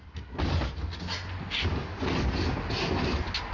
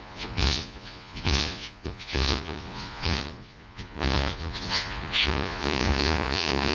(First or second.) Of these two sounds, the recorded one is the first